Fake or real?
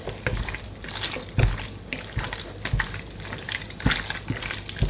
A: real